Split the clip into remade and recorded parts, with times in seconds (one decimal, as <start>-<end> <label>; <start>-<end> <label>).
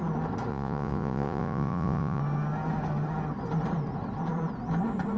0.0-0.5 recorded; 0.5-2.2 remade; 2.2-5.2 recorded